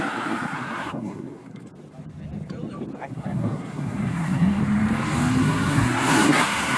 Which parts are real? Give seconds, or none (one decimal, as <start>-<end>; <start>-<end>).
1.7-3.1; 4.6-5.4